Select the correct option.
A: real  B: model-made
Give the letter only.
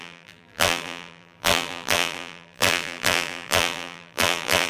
B